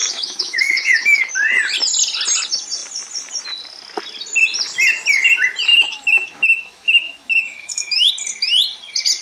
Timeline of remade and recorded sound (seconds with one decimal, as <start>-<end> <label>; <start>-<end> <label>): 0.0-1.3 remade; 1.3-5.7 recorded; 5.7-8.1 remade; 8.1-9.2 recorded